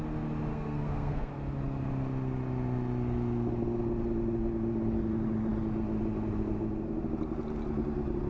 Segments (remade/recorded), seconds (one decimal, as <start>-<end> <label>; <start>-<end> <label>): 0.0-0.5 recorded; 0.5-1.3 remade; 1.3-8.3 recorded